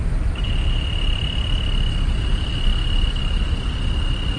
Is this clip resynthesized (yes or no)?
no